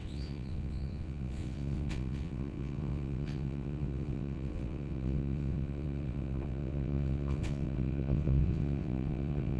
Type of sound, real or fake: fake